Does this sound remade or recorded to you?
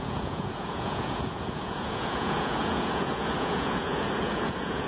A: remade